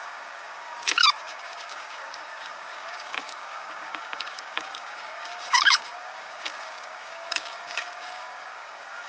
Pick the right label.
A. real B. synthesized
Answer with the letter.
B